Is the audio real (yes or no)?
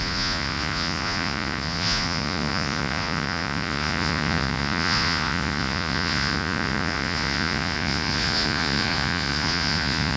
no